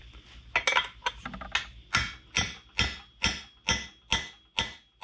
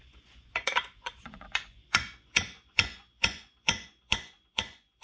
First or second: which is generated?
second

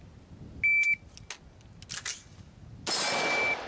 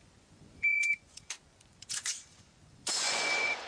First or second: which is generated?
second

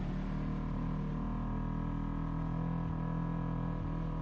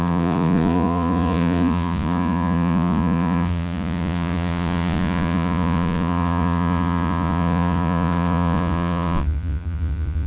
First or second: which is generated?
second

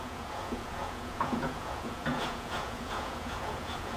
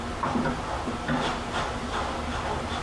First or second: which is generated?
first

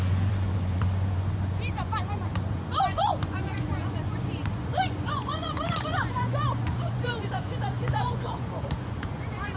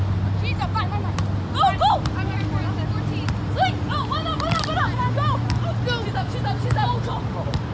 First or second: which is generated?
first